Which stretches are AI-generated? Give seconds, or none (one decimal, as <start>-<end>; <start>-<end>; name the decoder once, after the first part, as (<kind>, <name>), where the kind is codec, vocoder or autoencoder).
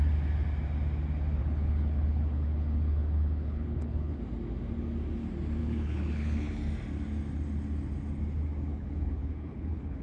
1.4-4.2 (codec, HILCodec); 5.6-6.6; 8.7-10.0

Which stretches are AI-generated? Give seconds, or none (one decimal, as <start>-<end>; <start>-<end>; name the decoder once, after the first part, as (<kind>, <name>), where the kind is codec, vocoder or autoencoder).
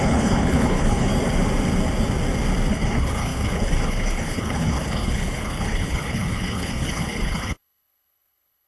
0.0-1.1 (codec, HILCodec); 2.7-8.7